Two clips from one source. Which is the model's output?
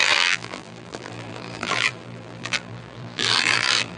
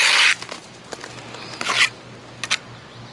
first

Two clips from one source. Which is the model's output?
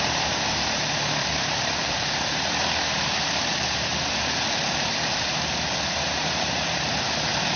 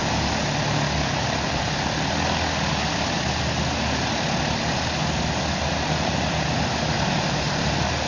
first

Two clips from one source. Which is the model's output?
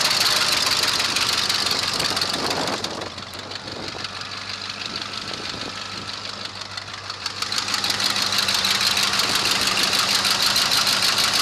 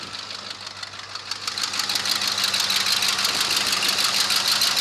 first